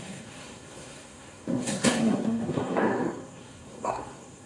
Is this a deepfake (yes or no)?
yes